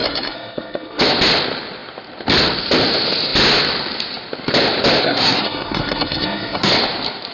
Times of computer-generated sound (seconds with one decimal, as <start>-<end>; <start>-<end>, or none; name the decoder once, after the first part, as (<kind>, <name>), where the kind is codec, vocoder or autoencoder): 0.0-1.0 (codec, SNAC); 5.0-6.7